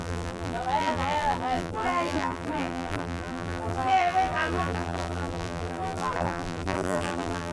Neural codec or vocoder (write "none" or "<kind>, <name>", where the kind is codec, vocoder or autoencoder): vocoder, BigVGAN v2